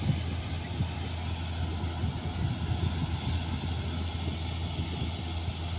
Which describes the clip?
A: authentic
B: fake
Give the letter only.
A